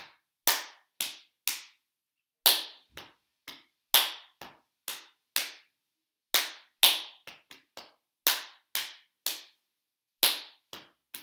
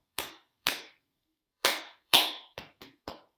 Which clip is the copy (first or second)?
second